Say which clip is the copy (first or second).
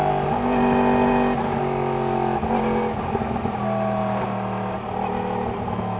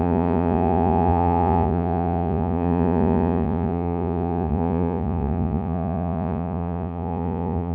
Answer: second